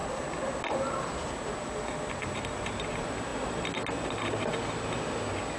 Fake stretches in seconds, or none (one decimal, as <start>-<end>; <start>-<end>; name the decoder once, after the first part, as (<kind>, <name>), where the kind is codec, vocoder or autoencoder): none